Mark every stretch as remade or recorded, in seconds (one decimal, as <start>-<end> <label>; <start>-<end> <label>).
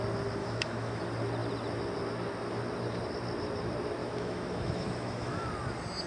0.0-0.4 recorded; 0.4-1.0 remade; 1.0-4.0 recorded; 4.0-5.5 remade; 5.5-6.1 recorded